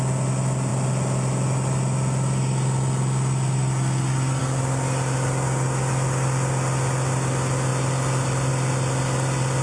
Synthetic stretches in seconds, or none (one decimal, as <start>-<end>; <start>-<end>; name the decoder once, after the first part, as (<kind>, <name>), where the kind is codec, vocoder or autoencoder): none